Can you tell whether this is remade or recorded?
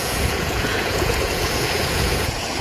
remade